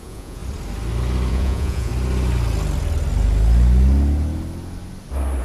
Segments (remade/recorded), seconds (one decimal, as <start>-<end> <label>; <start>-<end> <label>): 0.0-0.4 remade; 0.4-1.3 recorded; 1.3-1.9 remade; 1.9-5.4 recorded